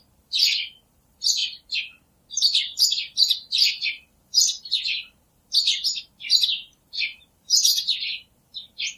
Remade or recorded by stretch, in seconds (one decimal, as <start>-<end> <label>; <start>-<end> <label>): 0.0-1.4 remade; 1.4-3.7 recorded; 3.7-9.0 remade